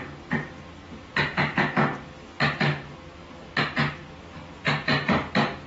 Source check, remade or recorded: recorded